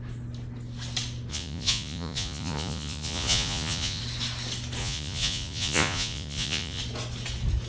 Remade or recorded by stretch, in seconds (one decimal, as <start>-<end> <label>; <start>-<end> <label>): 0.0-1.3 recorded; 1.3-4.0 remade; 4.0-4.8 recorded; 4.8-6.8 remade; 6.8-7.7 recorded